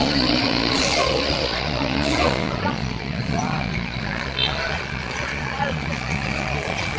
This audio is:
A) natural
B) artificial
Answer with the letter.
B